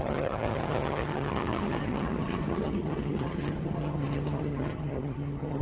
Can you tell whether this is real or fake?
fake